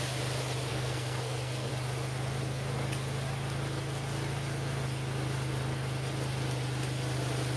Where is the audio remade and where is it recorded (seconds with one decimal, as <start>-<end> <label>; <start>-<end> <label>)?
0.0-0.7 recorded; 0.7-1.7 remade; 1.7-7.6 recorded